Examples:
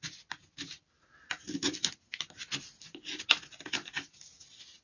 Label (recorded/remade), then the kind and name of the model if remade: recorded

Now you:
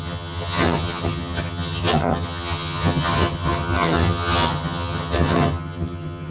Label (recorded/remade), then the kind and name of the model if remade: remade, vocoder, HiFi-GAN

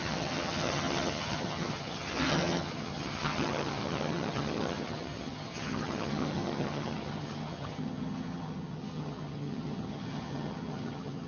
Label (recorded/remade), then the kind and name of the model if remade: remade, vocoder, HiFi-GAN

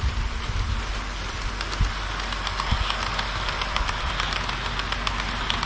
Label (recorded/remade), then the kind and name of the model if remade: recorded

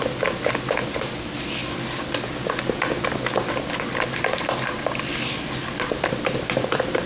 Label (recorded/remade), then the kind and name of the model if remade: recorded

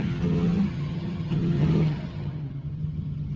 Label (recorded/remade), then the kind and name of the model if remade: remade, vocoder, HiFi-GAN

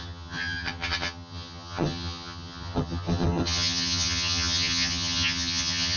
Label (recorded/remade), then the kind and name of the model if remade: remade, vocoder, HiFi-GAN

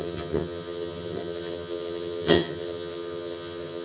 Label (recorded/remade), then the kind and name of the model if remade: remade, vocoder, HiFi-GAN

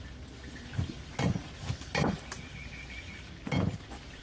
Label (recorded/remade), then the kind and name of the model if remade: recorded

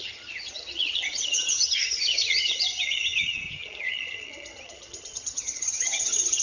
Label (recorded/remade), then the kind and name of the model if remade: remade, vocoder, HiFi-GAN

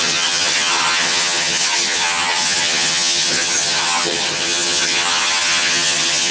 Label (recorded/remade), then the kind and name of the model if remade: remade, vocoder, HiFi-GAN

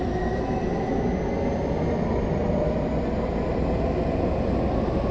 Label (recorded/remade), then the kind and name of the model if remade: recorded